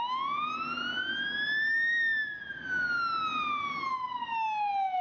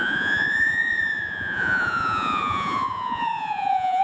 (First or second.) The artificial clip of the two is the second